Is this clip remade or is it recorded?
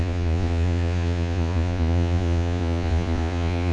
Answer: remade